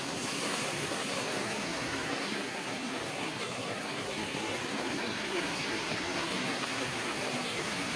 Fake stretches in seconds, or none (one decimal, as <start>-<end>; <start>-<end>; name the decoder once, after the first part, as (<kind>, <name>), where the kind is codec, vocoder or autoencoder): 0.0-8.0 (codec, SNAC)